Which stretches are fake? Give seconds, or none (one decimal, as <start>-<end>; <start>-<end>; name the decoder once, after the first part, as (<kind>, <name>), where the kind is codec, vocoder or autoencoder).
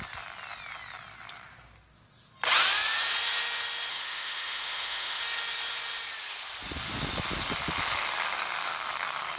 3.9-5.2 (autoencoder, DAC-VAE)